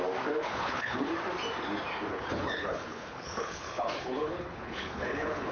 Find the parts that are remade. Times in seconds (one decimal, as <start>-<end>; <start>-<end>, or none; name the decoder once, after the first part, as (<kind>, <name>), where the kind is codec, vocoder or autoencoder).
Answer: 0.4-1.1 (codec, HILCodec); 2.1-5.5